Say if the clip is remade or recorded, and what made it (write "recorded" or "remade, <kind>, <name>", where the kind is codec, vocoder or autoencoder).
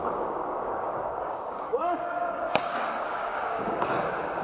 remade, codec, DAC